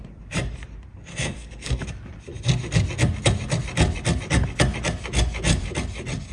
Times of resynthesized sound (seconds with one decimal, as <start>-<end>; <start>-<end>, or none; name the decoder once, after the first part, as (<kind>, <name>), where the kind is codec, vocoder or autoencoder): 1.1-1.8 (codec, SNAC)